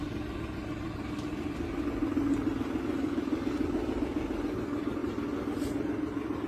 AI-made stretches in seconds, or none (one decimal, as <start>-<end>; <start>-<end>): none